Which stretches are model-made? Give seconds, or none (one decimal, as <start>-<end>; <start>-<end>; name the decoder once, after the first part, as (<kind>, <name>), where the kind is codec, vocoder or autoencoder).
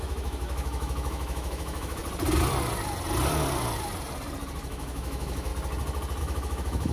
0.0-2.0 (autoencoder, DAC-VAE); 4.7-5.5; 6.2-6.9